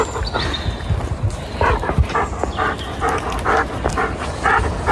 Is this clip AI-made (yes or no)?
no